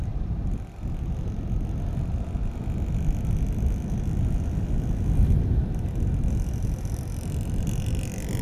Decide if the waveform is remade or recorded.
recorded